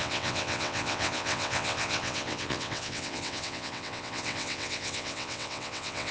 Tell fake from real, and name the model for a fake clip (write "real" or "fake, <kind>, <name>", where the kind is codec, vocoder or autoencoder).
fake, vocoder, WaveNeXt